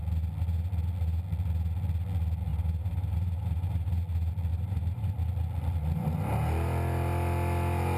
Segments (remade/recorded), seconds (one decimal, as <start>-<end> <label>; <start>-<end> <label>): 0.0-2.5 recorded; 2.5-3.9 remade; 3.9-4.5 recorded; 4.5-5.1 remade; 5.1-8.0 recorded